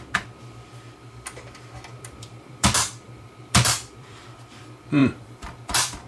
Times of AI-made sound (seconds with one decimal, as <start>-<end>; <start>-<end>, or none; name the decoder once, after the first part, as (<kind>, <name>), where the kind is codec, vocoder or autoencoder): 1.9-4.6 (vocoder, BigVGAN v2); 5.0-6.1